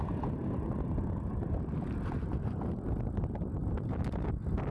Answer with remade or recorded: recorded